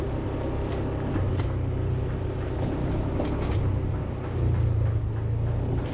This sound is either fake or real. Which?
real